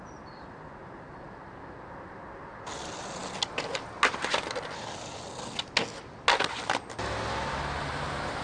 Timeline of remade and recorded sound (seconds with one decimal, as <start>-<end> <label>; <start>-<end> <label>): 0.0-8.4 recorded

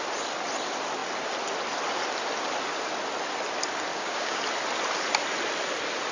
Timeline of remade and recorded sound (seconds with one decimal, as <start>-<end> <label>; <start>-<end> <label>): 0.0-3.9 recorded; 3.9-4.4 remade; 4.4-6.1 recorded

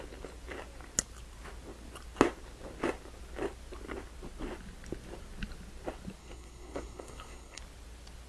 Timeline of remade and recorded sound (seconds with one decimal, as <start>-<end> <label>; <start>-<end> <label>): 0.0-6.2 recorded; 6.2-7.6 remade; 7.6-8.3 recorded

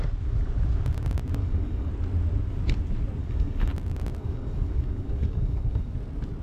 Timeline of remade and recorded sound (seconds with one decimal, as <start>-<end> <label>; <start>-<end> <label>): 0.0-1.4 recorded; 1.4-1.9 remade; 1.9-3.2 recorded; 3.2-3.7 remade; 3.7-4.2 recorded; 4.2-5.9 remade; 5.9-6.4 recorded

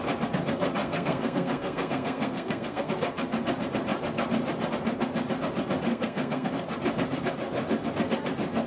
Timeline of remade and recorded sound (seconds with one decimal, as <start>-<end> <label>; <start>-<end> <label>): 0.0-0.8 recorded; 0.8-2.9 remade; 2.9-5.9 recorded; 5.9-6.5 remade; 6.5-8.7 recorded

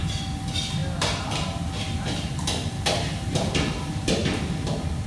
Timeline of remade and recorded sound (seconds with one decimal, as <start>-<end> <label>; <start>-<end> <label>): 0.0-4.2 remade; 4.2-5.1 recorded

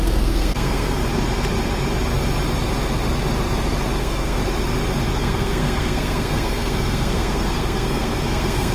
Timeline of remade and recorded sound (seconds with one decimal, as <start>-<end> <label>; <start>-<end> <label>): 0.0-1.0 remade; 1.0-4.0 recorded; 4.0-4.4 remade; 4.4-5.1 recorded; 5.1-8.7 remade